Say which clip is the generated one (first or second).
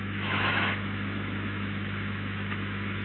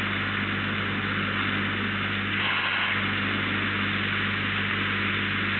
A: first